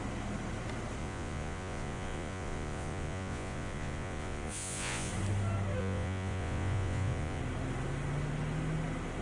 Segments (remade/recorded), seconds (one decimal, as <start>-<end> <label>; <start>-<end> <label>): 0.0-1.0 recorded; 1.0-5.1 remade; 5.1-5.8 recorded; 5.8-7.4 remade; 7.4-9.2 recorded

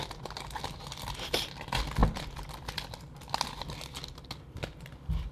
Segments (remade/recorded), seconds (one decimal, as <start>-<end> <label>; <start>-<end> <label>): 0.0-5.3 recorded

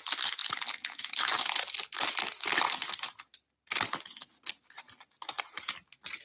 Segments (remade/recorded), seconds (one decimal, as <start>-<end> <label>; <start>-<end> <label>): 0.0-6.2 recorded

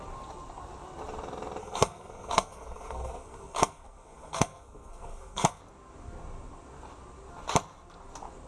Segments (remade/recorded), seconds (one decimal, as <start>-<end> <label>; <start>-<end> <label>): 0.0-1.6 recorded; 1.6-5.6 remade; 5.6-8.5 recorded